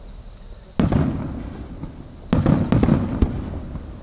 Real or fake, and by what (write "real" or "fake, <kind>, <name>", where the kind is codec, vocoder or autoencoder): real